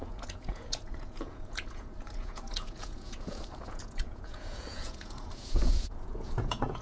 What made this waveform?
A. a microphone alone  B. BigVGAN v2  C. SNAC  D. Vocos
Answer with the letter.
D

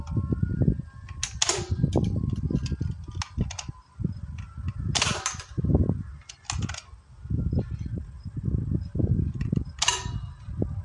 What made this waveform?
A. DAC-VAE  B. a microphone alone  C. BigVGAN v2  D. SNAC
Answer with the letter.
B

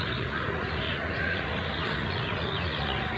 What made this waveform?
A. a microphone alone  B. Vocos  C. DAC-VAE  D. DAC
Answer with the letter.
B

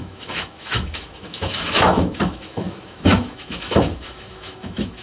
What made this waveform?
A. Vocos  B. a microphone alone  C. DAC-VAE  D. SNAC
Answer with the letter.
C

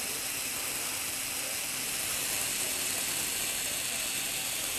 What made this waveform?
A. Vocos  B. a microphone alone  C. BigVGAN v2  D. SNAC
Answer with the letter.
B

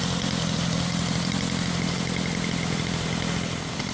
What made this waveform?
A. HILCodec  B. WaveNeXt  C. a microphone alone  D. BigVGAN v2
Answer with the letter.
D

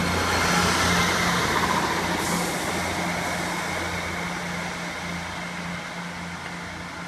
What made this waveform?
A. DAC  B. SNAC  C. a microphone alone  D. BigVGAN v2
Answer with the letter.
C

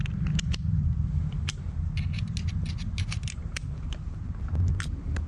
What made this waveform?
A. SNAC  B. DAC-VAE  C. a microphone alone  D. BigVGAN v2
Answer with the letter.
C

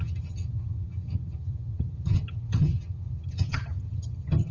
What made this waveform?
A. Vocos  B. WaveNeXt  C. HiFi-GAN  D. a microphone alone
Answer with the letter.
C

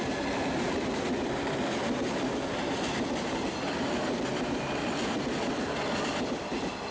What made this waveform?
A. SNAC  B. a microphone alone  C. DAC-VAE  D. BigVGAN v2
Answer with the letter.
D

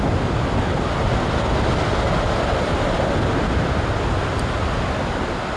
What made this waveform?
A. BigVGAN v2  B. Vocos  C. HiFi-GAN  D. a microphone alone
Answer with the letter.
D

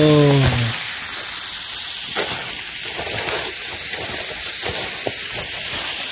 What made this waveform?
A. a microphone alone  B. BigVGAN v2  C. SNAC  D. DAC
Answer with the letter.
A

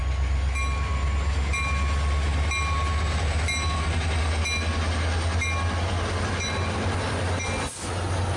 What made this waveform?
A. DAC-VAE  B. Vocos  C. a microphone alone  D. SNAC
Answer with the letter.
C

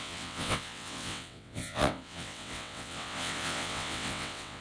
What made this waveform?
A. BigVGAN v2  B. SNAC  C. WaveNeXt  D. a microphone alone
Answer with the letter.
C